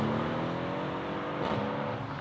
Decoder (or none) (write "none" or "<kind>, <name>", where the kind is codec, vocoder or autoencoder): none